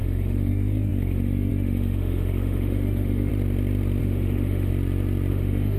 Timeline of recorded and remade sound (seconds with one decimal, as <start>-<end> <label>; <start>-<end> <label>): 0.0-3.3 remade; 3.3-4.0 recorded; 4.0-4.7 remade; 4.7-5.3 recorded; 5.3-5.8 remade